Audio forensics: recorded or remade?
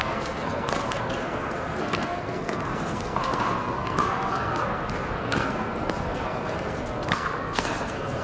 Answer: remade